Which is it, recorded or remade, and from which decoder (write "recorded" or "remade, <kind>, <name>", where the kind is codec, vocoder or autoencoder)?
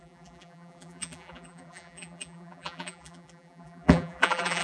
remade, vocoder, BigVGAN v2